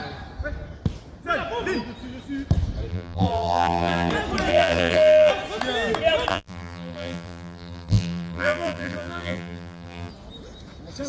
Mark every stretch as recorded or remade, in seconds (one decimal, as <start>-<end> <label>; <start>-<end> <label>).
0.0-2.9 recorded; 2.9-4.1 remade; 4.1-4.5 recorded; 4.5-5.3 remade; 5.3-6.3 recorded; 6.3-10.1 remade; 10.1-11.1 recorded